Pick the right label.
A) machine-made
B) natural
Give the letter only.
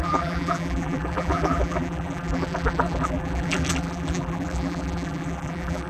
A